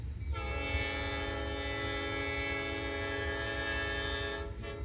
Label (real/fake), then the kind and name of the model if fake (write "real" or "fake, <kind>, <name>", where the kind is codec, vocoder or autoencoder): real